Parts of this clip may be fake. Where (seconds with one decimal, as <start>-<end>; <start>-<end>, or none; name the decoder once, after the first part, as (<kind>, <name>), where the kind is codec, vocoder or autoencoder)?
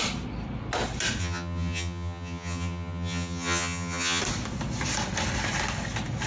1.2-4.2 (vocoder, HiFi-GAN)